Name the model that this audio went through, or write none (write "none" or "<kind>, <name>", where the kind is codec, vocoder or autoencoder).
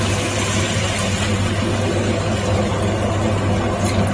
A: none